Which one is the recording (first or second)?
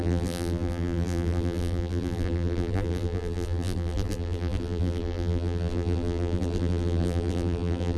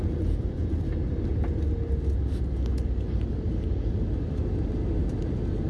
second